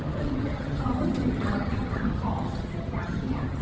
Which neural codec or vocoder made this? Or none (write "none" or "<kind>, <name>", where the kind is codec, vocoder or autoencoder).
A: vocoder, HiFi-GAN